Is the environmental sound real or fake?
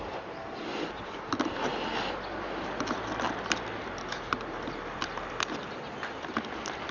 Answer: real